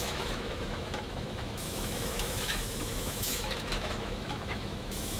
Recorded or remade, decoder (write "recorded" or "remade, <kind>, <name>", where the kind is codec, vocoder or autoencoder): remade, autoencoder, DAC-VAE